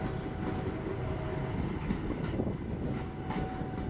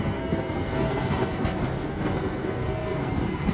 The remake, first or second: second